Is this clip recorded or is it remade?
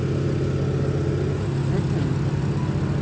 recorded